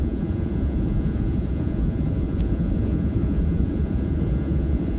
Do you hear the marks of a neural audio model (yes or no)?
yes